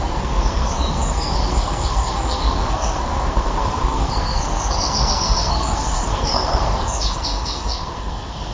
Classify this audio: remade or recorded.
remade